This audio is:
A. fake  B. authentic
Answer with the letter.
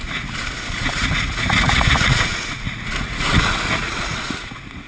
A